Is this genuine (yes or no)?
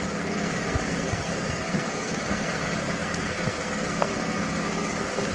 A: no